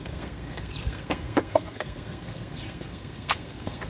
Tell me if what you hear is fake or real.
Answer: fake